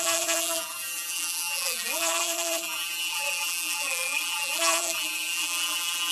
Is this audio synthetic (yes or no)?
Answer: yes